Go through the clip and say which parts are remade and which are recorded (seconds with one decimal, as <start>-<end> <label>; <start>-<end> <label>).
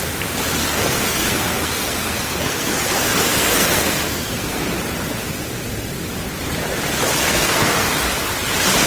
0.0-0.6 recorded; 0.6-4.6 remade; 4.6-7.2 recorded; 7.2-7.9 remade; 7.9-8.9 recorded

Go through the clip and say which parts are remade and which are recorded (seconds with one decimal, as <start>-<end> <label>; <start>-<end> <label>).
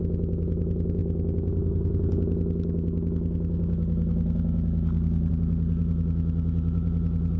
0.0-1.0 remade; 1.0-5.3 recorded; 5.3-7.4 remade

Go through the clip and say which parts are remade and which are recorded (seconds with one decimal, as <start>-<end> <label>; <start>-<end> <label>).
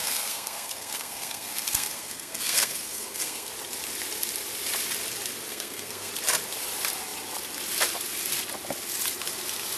0.0-3.5 remade; 3.5-5.5 recorded; 5.5-6.1 remade; 6.1-9.8 recorded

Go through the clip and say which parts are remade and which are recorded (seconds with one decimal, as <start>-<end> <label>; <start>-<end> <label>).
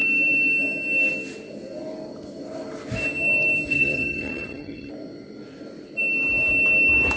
0.0-3.7 recorded; 3.7-4.9 remade; 4.9-7.2 recorded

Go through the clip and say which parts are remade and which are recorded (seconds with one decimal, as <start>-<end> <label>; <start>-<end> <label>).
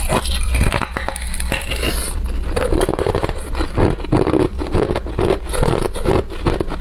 0.0-6.8 recorded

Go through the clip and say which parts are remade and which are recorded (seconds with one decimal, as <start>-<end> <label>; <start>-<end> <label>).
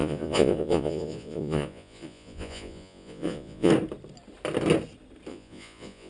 0.0-3.7 remade; 3.7-5.3 recorded; 5.3-6.1 remade